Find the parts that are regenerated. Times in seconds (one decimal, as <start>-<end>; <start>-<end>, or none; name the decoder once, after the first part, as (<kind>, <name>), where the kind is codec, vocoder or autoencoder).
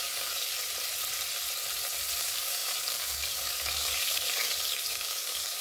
0.0-0.5 (codec, DAC); 2.2-5.6